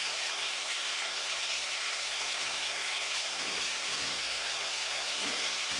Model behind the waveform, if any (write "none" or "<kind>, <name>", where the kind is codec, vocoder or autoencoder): codec, SNAC